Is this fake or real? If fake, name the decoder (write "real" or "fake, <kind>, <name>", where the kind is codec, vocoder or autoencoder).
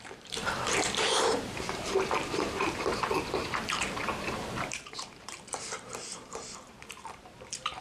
fake, vocoder, BigVGAN v2